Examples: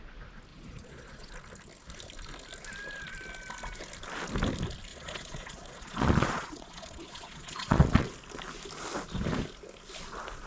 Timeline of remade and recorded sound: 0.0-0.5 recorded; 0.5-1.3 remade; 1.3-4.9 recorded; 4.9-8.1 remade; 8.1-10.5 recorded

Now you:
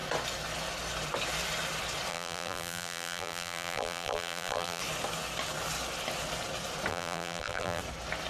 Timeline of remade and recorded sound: 0.0-2.1 recorded; 2.1-4.8 remade; 4.8-6.9 recorded; 6.9-7.8 remade; 7.8-8.3 recorded

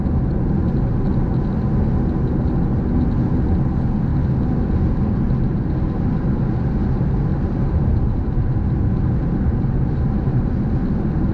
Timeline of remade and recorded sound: 0.0-7.3 recorded; 7.3-10.5 remade; 10.5-11.3 recorded

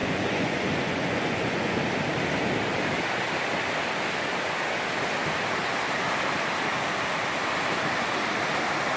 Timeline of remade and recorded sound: 0.0-1.8 remade; 1.8-9.0 recorded